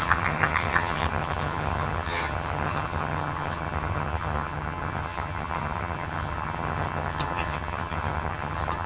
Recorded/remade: remade